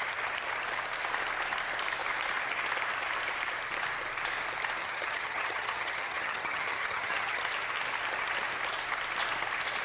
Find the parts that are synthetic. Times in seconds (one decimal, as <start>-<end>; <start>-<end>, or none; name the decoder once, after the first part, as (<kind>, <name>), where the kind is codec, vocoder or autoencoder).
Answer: 4.8-7.4 (vocoder, HiFi-GAN)